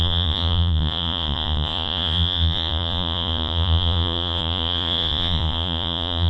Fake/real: fake